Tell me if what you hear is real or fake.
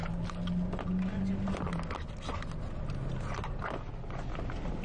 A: real